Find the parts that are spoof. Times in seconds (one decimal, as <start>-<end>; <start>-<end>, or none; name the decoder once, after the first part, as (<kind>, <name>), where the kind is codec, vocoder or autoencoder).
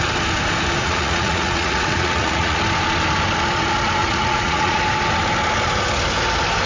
0.8-2.6 (vocoder, Vocos); 4.0-4.8